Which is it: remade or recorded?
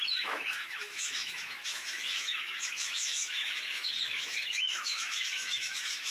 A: remade